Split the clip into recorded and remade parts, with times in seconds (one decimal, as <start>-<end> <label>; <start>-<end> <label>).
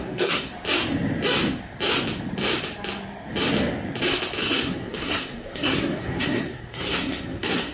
0.0-0.5 remade; 0.5-4.4 recorded; 4.4-7.7 remade